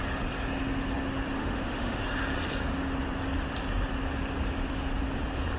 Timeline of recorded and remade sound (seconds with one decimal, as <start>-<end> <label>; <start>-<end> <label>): 0.0-1.4 recorded; 1.4-2.0 remade; 2.0-5.6 recorded